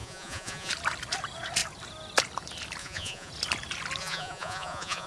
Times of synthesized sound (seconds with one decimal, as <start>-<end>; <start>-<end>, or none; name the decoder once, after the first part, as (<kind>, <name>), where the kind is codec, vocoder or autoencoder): 0.0-0.7 (vocoder, Vocos); 2.8-3.3; 4.0-5.1